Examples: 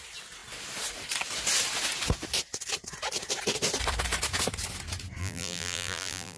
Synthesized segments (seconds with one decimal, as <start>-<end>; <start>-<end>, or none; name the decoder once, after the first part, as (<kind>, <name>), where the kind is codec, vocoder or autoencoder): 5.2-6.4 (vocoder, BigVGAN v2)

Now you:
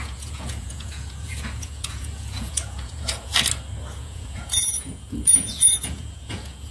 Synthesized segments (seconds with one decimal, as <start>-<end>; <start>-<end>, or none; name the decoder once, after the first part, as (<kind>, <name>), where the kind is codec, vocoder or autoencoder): 0.0-3.3 (vocoder, Vocos); 4.0-6.7

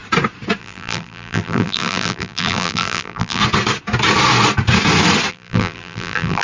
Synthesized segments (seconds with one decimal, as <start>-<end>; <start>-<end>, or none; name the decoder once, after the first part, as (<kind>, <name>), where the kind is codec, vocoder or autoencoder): 0.6-3.4 (vocoder, BigVGAN v2); 5.3-6.4

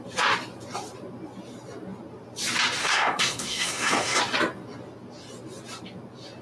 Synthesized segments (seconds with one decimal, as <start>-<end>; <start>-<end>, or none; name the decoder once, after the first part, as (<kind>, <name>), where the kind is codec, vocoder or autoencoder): 2.8-4.2 (codec, SNAC)

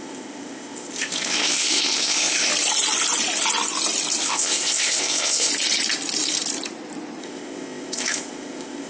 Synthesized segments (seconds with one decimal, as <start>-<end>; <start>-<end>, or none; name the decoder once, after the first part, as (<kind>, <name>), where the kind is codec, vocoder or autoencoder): 0.0-2.5 (codec, ZipCodec); 4.2-5.5; 7.2-8.9

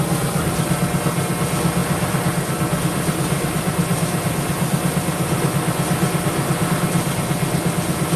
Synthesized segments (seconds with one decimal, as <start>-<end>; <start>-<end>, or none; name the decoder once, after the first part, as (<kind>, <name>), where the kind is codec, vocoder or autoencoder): 1.8-6.7 (vocoder, BigVGAN v2)